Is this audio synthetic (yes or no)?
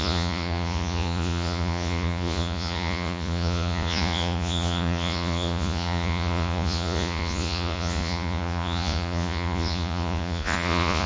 yes